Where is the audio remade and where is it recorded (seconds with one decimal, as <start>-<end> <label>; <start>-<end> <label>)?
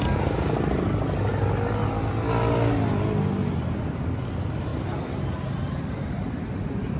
0.0-7.0 recorded